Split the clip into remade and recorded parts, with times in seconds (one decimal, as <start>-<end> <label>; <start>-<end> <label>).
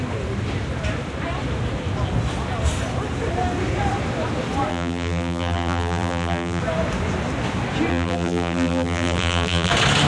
0.0-4.7 recorded; 4.7-6.6 remade; 6.6-7.9 recorded; 7.9-9.7 remade; 9.7-10.1 recorded